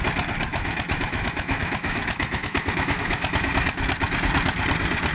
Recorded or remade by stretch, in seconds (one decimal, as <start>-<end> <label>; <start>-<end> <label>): 0.0-0.5 recorded; 0.5-3.5 remade; 3.5-5.1 recorded